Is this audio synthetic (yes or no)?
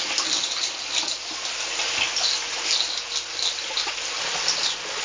no